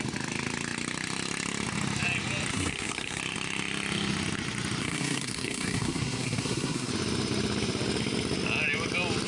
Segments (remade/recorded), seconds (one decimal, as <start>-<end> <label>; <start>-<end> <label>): 0.0-2.5 recorded; 2.5-3.2 remade; 3.2-4.8 recorded; 4.8-6.9 remade; 6.9-9.3 recorded